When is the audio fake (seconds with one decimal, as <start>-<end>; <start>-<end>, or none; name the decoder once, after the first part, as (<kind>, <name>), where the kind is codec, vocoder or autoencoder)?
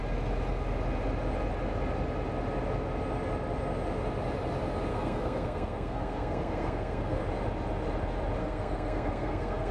4.9-7.2 (codec, SNAC); 8.4-9.7